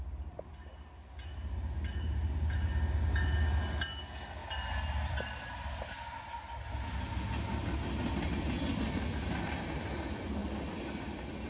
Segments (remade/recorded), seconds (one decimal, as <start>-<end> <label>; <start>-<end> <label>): 0.0-11.5 recorded